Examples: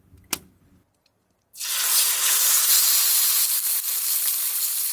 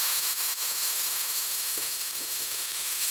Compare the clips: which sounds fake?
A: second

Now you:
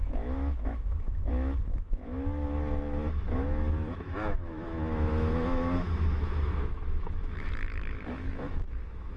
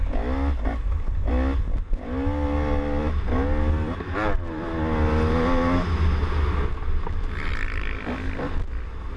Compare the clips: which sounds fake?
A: first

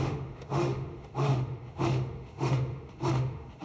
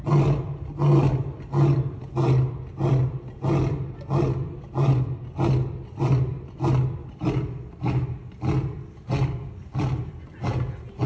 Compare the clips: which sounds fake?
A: first